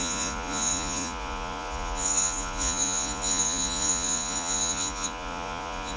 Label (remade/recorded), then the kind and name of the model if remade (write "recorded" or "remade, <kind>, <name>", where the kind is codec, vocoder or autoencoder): remade, vocoder, Vocos